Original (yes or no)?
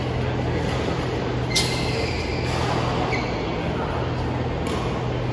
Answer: yes